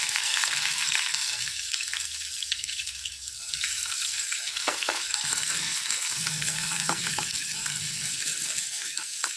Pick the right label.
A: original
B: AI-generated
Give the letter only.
B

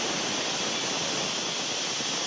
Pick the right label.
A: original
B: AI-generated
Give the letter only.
A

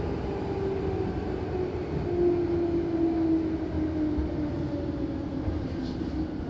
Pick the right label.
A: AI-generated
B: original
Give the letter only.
B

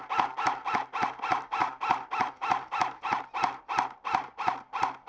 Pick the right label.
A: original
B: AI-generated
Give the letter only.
A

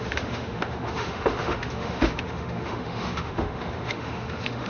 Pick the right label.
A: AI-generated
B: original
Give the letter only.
A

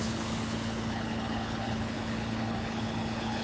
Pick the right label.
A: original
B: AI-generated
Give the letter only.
B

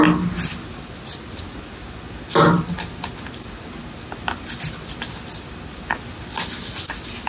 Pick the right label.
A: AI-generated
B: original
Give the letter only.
B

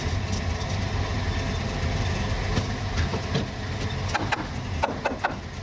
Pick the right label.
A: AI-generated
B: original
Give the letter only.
B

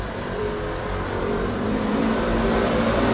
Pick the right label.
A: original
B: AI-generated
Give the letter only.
B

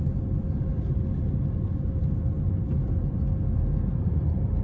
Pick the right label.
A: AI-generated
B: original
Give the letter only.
B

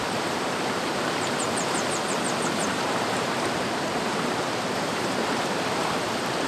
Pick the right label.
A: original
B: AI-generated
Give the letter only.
B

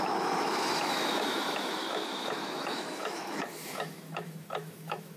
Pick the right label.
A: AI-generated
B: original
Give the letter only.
A